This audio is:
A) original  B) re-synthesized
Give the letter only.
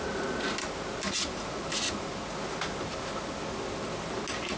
A